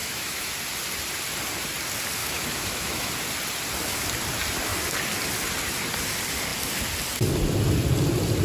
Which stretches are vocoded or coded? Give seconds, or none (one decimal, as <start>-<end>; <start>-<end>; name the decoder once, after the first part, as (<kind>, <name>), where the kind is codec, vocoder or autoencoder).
0.0-0.5 (autoencoder, DAC-VAE); 2.2-3.1